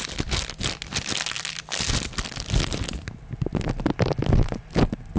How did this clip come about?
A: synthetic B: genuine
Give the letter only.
B